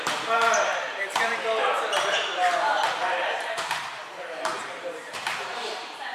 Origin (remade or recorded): remade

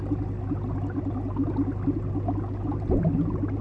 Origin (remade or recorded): recorded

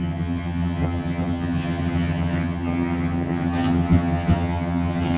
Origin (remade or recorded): remade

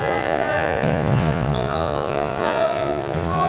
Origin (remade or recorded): remade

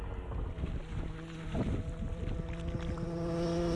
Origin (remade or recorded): recorded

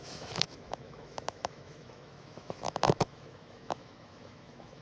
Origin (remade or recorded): remade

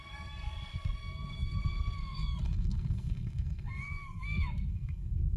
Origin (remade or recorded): remade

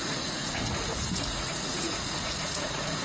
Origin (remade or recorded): remade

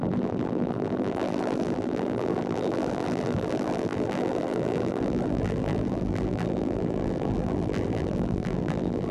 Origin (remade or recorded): remade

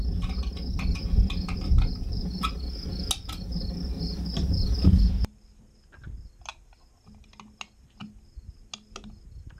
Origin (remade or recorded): recorded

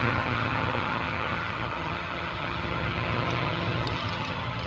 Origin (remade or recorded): remade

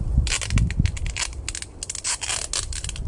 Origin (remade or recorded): recorded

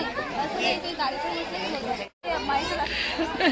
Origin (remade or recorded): recorded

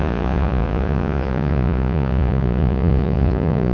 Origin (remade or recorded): remade